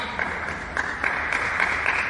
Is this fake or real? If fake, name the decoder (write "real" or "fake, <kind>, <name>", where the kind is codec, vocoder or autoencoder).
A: real